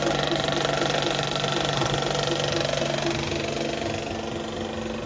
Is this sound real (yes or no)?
yes